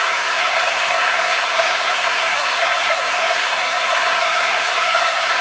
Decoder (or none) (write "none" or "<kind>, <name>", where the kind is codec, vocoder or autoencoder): codec, SNAC